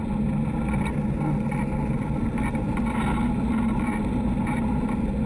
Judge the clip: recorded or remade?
recorded